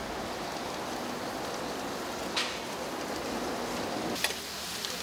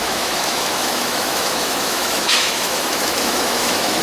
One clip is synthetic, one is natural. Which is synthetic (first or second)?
second